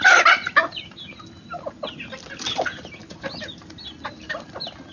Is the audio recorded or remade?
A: recorded